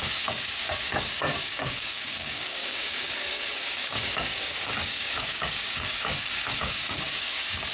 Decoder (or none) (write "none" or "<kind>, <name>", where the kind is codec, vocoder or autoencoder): codec, DAC